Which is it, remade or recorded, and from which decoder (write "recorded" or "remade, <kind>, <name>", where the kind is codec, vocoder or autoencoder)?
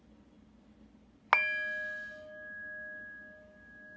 recorded